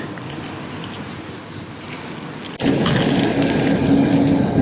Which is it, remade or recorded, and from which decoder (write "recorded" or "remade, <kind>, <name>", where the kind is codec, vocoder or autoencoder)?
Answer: recorded